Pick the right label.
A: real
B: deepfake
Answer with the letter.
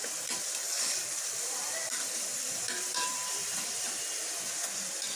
B